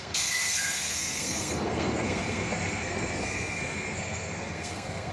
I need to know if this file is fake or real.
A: fake